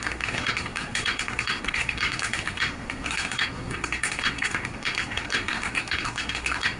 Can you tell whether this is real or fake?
fake